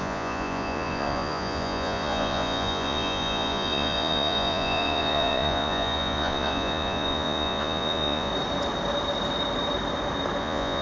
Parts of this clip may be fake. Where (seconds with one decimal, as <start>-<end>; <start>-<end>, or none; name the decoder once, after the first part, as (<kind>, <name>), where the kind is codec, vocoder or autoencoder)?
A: 0.0-8.3 (vocoder, Vocos); 10.4-10.8